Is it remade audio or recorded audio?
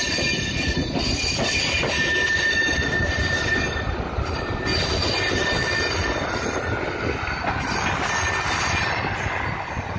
recorded